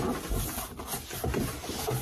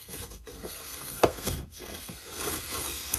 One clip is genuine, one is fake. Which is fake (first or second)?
second